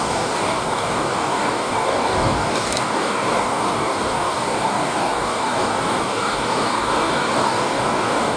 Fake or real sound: fake